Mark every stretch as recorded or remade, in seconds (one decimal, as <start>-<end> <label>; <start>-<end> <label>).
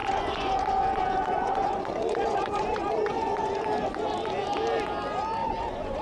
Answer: 0.0-3.6 remade; 3.6-5.4 recorded; 5.4-6.0 remade